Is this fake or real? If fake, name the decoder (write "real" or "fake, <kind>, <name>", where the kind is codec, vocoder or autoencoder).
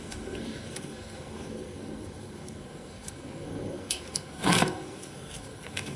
fake, codec, SNAC